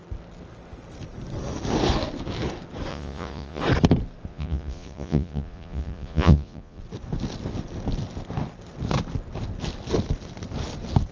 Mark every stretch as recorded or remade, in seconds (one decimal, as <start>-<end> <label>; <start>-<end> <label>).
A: 0.0-2.9 recorded; 2.9-3.6 remade; 3.6-4.3 recorded; 4.3-6.8 remade; 6.8-11.1 recorded